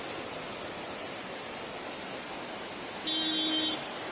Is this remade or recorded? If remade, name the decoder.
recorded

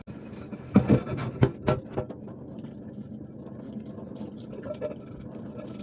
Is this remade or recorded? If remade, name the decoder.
recorded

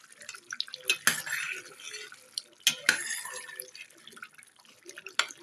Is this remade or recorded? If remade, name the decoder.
recorded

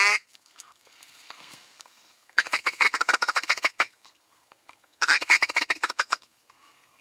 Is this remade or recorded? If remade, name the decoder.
remade, codec, SNAC